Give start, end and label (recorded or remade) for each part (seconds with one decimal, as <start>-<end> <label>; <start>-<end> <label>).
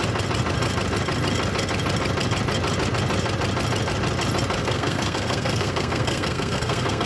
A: 0.0-4.6 recorded; 4.6-7.1 remade